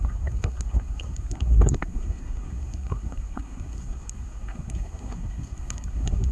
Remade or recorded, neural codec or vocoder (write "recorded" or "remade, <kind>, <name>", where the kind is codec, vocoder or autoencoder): remade, codec, SNAC